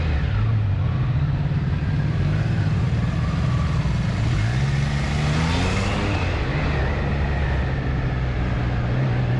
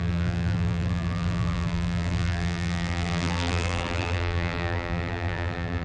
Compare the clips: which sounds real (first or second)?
first